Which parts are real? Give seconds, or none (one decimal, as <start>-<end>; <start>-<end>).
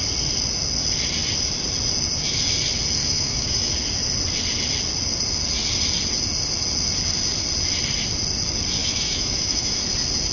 0.0-3.0; 3.7-8.8; 9.8-10.3